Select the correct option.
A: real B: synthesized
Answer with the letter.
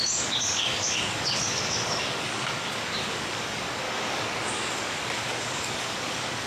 B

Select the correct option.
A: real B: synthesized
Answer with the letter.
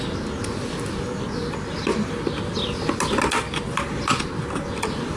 A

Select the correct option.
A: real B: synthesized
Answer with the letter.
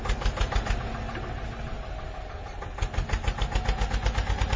A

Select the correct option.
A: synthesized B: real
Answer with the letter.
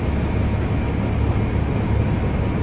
B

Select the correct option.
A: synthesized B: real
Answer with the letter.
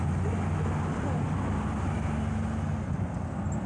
B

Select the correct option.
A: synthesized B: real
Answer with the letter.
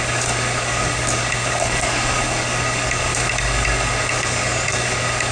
A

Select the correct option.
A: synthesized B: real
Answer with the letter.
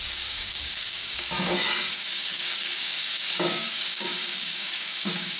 A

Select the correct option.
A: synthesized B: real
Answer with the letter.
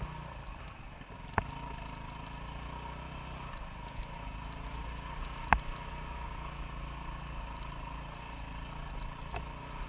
B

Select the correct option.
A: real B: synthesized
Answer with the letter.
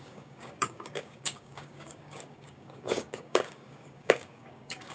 B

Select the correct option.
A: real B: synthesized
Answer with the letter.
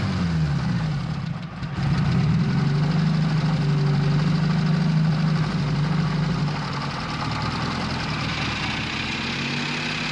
A